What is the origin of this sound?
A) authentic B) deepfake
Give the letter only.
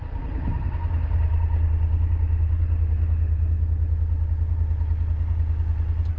A